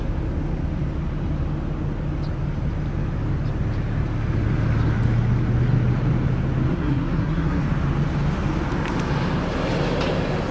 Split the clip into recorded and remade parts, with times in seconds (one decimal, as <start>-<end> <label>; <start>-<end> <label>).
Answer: 0.0-6.7 recorded; 6.7-7.6 remade; 7.6-10.5 recorded